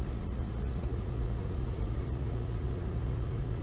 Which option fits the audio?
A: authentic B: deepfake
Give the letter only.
B